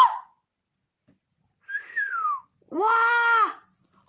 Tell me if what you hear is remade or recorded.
recorded